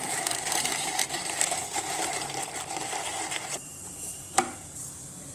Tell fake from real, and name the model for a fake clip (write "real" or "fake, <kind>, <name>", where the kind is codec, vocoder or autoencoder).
fake, vocoder, BigVGAN v2